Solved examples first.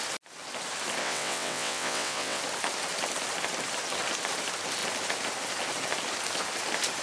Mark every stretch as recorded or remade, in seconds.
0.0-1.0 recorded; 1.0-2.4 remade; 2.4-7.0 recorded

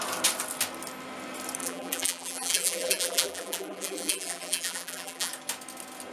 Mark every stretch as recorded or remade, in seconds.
0.0-1.6 recorded; 1.6-5.3 remade; 5.3-6.1 recorded

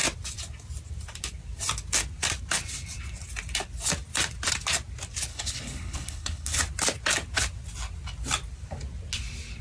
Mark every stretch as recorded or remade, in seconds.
0.0-5.3 recorded; 5.3-6.6 remade; 6.6-9.6 recorded

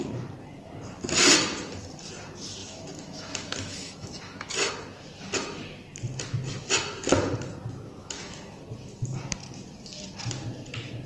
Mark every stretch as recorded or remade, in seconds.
0.0-2.6 recorded; 2.6-4.7 remade; 4.7-8.0 recorded; 8.0-8.6 remade; 8.6-11.1 recorded